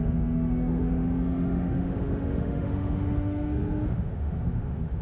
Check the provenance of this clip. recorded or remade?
remade